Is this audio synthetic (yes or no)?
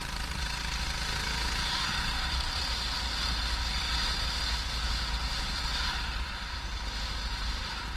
no